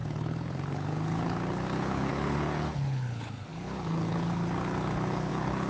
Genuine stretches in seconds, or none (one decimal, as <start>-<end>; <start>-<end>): none

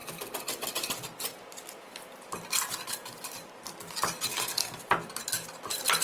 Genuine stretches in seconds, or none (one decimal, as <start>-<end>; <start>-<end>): 0.0-4.3; 4.8-6.0